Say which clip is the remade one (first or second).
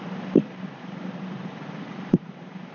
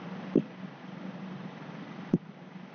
first